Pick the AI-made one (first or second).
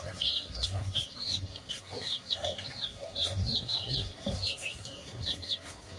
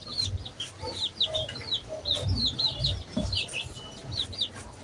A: first